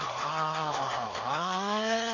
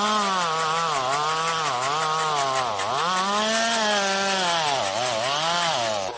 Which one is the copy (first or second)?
first